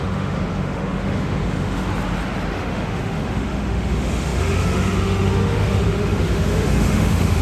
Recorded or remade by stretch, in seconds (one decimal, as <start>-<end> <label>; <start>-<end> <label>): 0.0-1.9 remade; 1.9-2.5 recorded; 2.5-7.4 remade

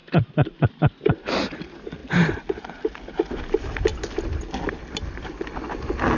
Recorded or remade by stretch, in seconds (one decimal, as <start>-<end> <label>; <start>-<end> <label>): 0.0-6.2 recorded

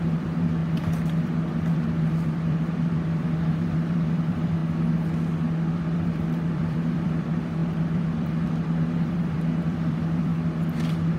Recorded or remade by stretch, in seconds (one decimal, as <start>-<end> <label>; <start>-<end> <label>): 0.0-0.6 remade; 0.6-1.7 recorded; 1.7-4.6 remade; 4.6-5.7 recorded; 5.7-10.3 remade; 10.3-11.2 recorded

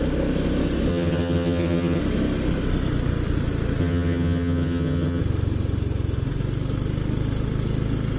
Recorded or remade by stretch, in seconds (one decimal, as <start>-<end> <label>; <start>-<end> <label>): 0.0-0.9 recorded; 0.9-2.0 remade; 2.0-3.8 recorded; 3.8-5.2 remade; 5.2-8.2 recorded

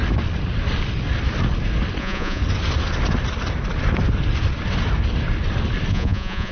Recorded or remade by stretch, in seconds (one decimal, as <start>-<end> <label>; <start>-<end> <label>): 0.0-2.0 recorded; 2.0-2.4 remade; 2.4-5.9 recorded; 5.9-6.5 remade

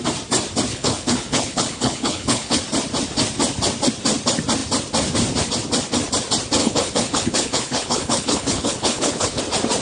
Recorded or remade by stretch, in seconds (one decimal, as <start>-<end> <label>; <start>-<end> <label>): 0.0-0.7 recorded; 0.7-2.6 remade; 2.6-6.6 recorded; 6.6-9.4 remade; 9.4-9.8 recorded